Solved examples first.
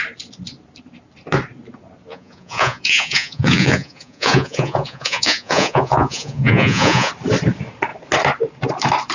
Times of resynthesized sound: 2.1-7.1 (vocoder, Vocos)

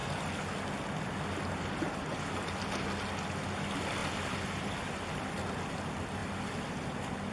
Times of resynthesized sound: none

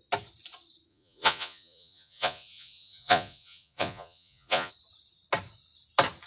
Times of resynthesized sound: 0.9-4.7 (vocoder, Vocos)

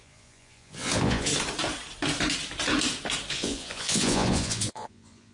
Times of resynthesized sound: 0.0-1.3 (vocoder, Vocos); 3.3-5.3

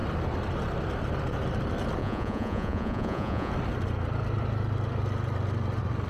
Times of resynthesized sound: 2.0-3.5 (vocoder, Vocos)

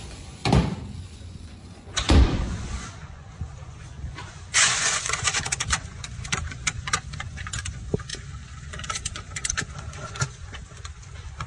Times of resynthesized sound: 0.0-0.4 (vocoder, Vocos); 1.0-11.5

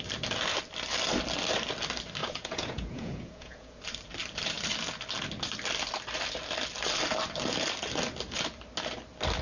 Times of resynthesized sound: 2.2-3.8 (vocoder, Vocos)